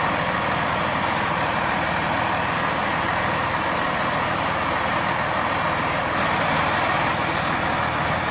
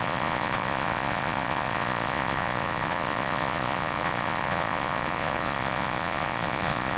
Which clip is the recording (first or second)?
first